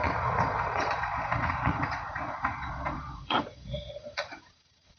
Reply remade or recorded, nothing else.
remade